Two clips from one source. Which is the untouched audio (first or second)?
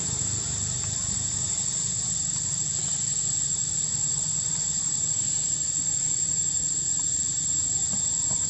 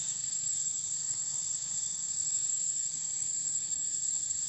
first